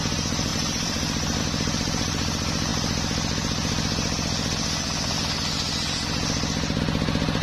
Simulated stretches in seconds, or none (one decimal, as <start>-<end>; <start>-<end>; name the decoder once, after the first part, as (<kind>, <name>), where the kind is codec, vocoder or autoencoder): 0.5-1.4 (vocoder, BigVGAN v2)